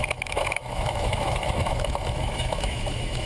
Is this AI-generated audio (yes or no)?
yes